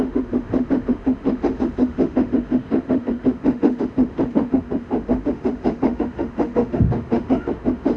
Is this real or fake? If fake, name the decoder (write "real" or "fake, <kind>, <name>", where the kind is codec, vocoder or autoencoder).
fake, autoencoder, DAC-VAE